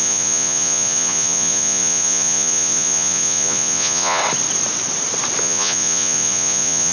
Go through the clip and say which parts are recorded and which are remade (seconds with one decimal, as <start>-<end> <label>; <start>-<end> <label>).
0.0-4.2 remade; 4.2-5.4 recorded; 5.4-6.9 remade

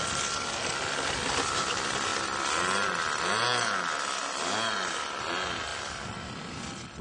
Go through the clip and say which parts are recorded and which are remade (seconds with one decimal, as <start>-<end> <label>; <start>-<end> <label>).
0.0-7.0 recorded

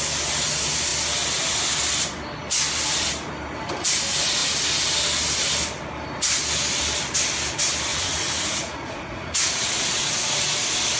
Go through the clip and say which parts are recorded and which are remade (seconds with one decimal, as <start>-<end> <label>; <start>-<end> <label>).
0.0-7.9 recorded; 7.9-10.4 remade; 10.4-11.0 recorded

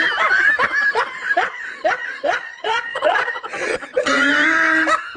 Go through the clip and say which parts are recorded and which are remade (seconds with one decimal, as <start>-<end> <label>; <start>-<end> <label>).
0.0-1.2 recorded; 1.2-4.3 remade; 4.3-5.2 recorded

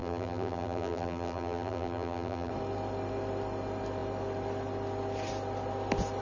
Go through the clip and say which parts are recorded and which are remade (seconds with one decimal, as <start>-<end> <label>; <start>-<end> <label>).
0.0-2.5 remade; 2.5-6.2 recorded

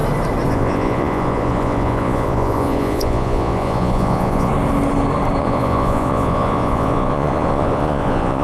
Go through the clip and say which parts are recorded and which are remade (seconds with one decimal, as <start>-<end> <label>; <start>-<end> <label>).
0.0-0.5 recorded; 0.5-4.5 remade; 4.5-5.4 recorded; 5.4-8.4 remade

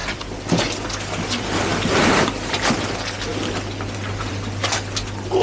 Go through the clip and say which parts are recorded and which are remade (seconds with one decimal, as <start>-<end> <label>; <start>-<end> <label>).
0.0-1.7 recorded; 1.7-2.5 remade; 2.5-5.4 recorded

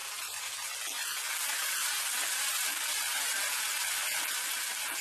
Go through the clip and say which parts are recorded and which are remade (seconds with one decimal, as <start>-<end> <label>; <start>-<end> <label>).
0.0-5.0 recorded